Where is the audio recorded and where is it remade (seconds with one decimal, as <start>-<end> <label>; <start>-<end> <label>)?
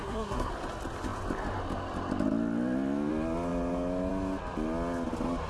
0.0-0.5 remade; 0.5-5.5 recorded